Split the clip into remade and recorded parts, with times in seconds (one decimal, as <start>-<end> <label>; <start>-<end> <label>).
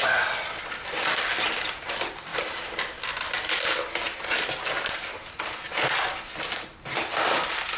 0.0-7.8 recorded